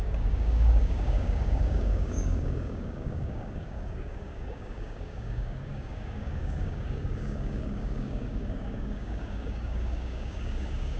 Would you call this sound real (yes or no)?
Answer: no